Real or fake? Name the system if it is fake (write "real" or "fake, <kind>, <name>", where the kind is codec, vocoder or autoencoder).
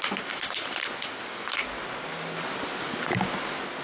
real